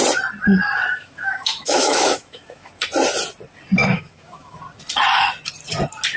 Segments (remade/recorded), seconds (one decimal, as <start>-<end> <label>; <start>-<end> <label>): 0.0-0.9 recorded; 0.9-2.7 remade; 2.7-3.8 recorded; 3.8-4.6 remade; 4.6-6.2 recorded